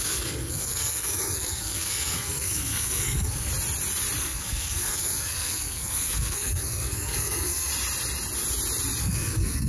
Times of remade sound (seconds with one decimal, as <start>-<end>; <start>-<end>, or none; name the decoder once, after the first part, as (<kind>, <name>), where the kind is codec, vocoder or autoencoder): 0.0-3.5 (codec, SNAC); 4.2-7.7; 9.0-9.7